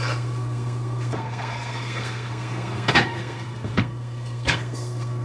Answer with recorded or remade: remade